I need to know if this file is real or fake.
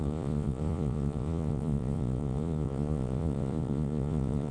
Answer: fake